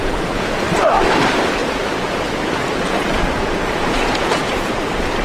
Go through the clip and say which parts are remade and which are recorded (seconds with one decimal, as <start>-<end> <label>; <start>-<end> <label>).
0.0-0.6 remade; 0.6-1.6 recorded; 1.6-4.7 remade; 4.7-5.2 recorded